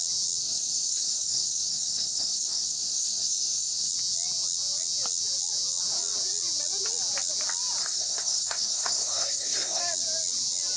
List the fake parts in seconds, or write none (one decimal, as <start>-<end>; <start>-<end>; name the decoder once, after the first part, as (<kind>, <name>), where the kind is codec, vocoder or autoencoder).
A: 0.4-3.9 (codec, SNAC); 7.8-9.8